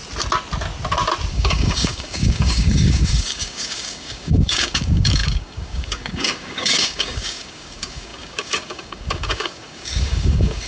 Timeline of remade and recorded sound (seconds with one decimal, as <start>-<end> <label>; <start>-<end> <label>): 0.0-1.3 recorded; 1.3-10.7 remade